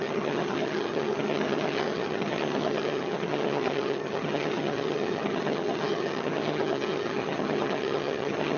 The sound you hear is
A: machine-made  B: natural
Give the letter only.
A